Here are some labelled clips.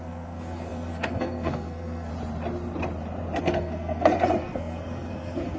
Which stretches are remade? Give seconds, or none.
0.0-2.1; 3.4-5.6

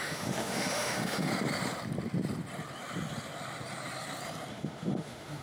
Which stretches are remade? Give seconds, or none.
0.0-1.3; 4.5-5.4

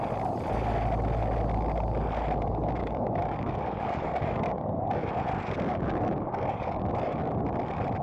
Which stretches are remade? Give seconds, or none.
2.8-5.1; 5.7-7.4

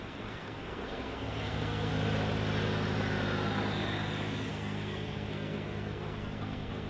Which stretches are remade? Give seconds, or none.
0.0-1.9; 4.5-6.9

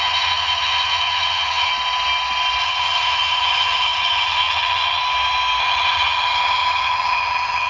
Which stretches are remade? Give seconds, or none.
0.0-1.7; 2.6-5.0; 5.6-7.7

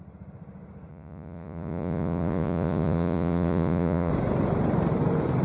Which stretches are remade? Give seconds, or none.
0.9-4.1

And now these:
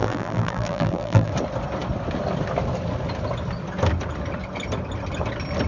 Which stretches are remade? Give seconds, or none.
0.0-1.3